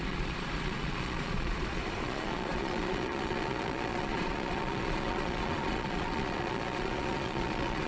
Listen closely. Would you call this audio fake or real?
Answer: fake